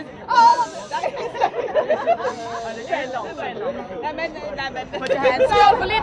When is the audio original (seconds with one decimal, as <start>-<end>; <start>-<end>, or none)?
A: 0.0-0.5; 1.9-6.0